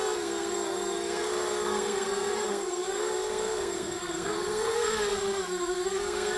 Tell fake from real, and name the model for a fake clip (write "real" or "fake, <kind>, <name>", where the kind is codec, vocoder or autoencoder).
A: fake, codec, SNAC